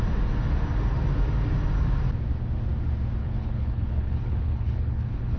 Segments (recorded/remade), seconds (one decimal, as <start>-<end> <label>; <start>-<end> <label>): 0.0-3.2 recorded; 3.2-5.4 remade